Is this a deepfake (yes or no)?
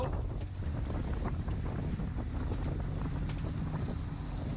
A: no